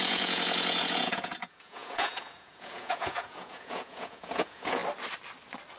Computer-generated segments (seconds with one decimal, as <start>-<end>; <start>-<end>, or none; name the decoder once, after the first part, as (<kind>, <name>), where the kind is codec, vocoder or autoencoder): 0.0-4.8 (vocoder, Vocos)